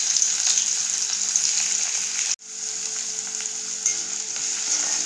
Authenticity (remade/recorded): recorded